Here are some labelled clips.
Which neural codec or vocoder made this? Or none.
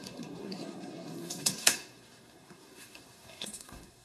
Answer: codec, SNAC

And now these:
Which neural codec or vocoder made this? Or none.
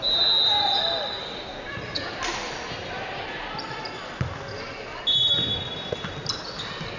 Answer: none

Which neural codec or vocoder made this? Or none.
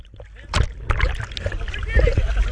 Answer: none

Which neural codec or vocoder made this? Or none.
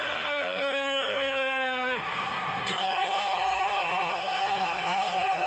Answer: codec, SNAC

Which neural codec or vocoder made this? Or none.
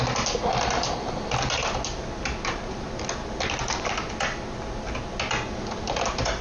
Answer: none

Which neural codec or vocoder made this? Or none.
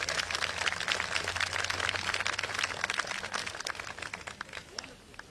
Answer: none